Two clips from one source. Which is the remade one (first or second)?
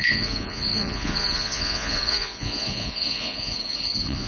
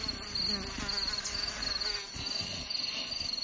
first